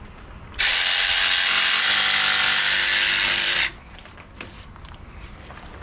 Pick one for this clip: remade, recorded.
recorded